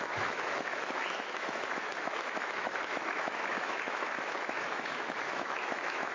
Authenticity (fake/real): fake